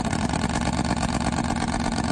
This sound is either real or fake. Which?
real